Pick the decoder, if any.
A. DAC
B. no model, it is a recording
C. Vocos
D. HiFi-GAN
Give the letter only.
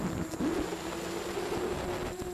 B